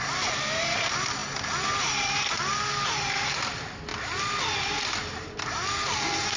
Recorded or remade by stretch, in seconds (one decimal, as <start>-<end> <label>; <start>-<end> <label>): 0.0-6.4 recorded